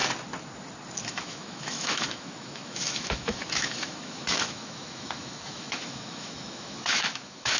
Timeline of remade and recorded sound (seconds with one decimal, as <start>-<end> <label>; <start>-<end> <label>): 0.0-1.0 recorded; 1.0-7.6 remade